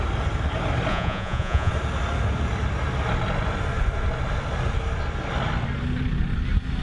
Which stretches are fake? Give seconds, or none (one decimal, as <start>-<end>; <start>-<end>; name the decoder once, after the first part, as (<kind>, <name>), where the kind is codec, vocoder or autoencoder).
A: 0.9-1.7 (vocoder, Vocos)